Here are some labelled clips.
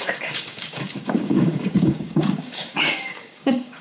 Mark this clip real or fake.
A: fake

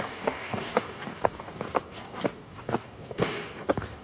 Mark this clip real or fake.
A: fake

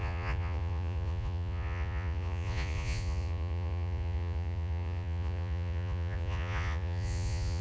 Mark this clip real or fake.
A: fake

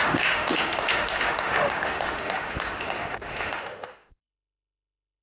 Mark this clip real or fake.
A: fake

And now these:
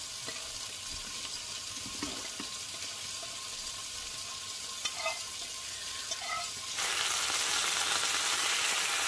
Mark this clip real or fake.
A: real